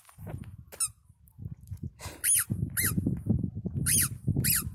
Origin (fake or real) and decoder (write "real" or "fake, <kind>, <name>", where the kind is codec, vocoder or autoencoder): real